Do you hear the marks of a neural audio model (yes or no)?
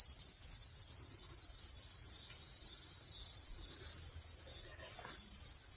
no